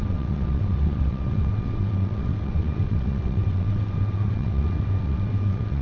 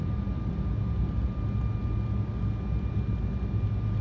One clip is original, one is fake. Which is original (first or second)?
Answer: second